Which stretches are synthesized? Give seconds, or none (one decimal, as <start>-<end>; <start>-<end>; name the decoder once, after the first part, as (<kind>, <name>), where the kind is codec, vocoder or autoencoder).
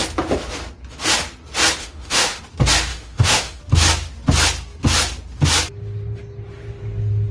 1.8-2.4 (autoencoder, DAC-VAE); 2.9-3.6